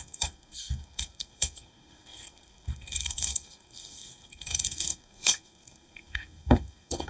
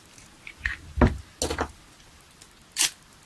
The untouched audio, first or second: second